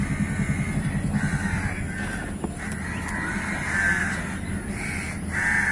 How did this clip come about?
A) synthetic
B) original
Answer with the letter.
B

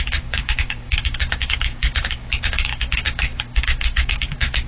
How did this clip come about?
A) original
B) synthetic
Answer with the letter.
B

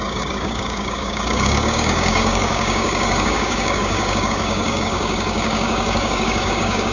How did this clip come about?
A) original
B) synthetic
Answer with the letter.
B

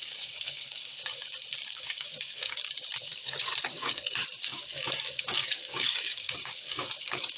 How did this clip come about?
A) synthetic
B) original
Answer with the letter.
A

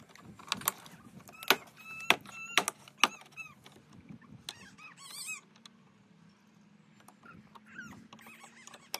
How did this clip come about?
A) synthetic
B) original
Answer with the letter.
B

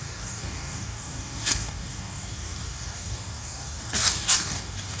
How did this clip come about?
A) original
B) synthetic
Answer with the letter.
B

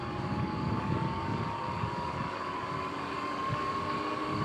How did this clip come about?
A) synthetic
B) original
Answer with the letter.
A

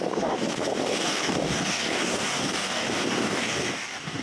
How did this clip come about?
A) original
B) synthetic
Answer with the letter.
B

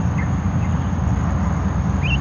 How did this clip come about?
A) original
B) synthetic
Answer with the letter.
A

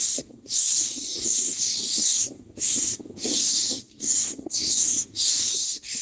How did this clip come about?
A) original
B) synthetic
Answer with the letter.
B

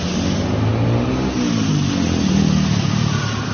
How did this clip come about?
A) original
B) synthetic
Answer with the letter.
A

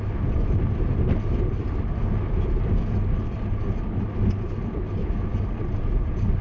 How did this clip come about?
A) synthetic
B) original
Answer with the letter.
B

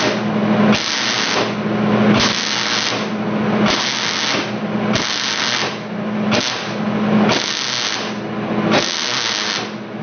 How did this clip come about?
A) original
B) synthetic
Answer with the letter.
A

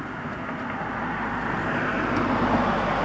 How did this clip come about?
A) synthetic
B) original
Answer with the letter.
B